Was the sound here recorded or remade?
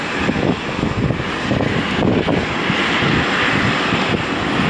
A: recorded